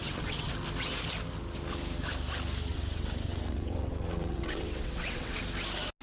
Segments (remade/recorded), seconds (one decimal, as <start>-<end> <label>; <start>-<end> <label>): 0.0-0.5 remade; 0.5-2.7 recorded; 2.7-5.4 remade; 5.4-6.0 recorded